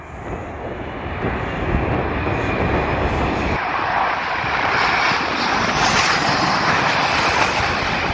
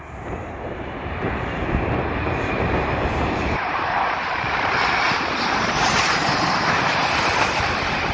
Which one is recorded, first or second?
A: first